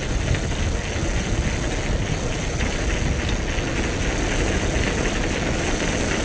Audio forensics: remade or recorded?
recorded